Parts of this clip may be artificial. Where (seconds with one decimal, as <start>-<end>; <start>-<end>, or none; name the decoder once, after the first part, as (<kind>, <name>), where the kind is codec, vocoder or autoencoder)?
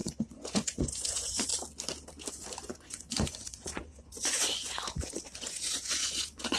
0.0-1.5 (vocoder, Vocos); 2.3-6.6